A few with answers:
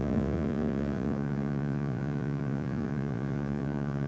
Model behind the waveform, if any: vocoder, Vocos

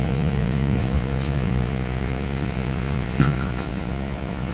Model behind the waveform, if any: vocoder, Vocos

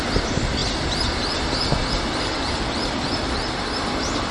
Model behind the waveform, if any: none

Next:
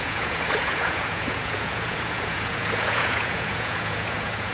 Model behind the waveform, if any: vocoder, Vocos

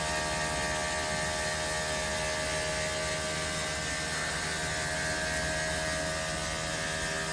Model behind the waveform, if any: none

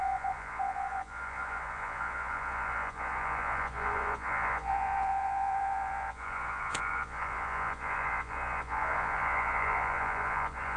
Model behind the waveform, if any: vocoder, Vocos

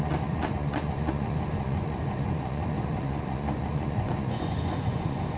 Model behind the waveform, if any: vocoder, Vocos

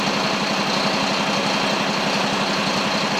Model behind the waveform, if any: none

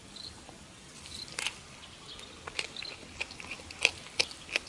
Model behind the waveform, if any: none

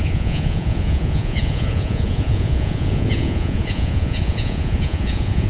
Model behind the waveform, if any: vocoder, Vocos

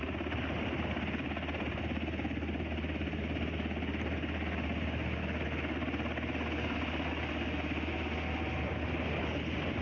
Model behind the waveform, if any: none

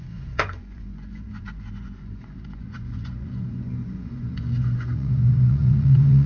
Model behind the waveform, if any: vocoder, Vocos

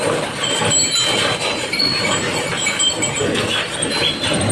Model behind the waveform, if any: none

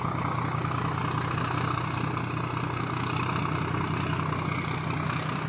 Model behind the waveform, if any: none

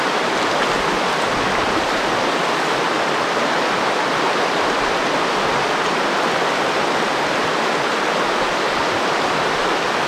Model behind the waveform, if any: none